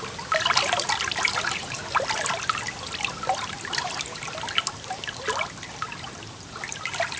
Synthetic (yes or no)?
no